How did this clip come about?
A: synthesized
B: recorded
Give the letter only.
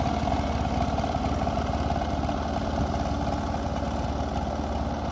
B